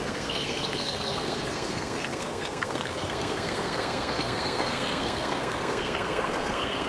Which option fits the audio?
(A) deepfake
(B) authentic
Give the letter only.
A